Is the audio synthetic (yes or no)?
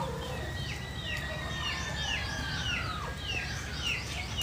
no